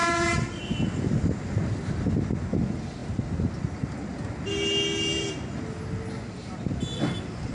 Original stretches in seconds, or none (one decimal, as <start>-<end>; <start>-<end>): 0.0-7.5